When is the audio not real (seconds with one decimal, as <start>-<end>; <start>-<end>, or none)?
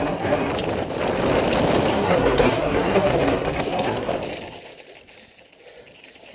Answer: 0.0-0.5; 1.9-4.1